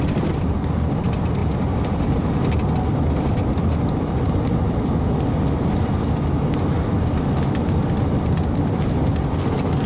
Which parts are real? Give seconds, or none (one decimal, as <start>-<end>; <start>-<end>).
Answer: 0.0-9.9

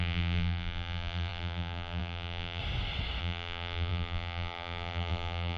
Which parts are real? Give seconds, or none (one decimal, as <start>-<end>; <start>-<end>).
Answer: 2.6-3.2

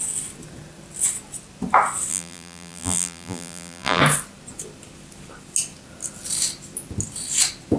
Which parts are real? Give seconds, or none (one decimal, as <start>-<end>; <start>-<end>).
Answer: 0.0-2.1; 4.0-7.8

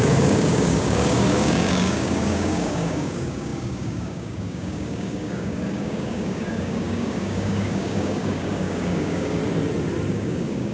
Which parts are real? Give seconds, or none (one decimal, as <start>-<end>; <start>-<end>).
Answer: 9.4-10.1

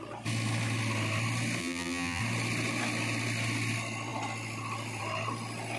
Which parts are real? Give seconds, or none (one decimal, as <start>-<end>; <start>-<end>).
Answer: 0.0-1.6; 2.2-5.8